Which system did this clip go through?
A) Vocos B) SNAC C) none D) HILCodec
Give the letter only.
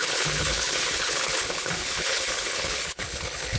D